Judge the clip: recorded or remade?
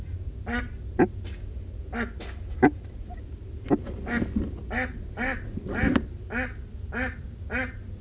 recorded